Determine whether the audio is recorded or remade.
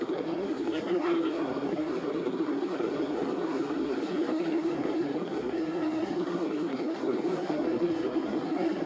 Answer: remade